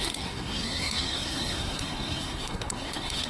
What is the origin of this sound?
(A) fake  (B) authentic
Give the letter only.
A